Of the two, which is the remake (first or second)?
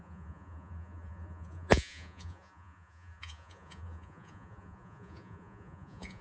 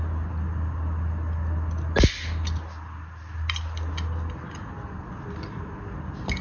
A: first